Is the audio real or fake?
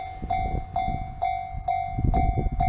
real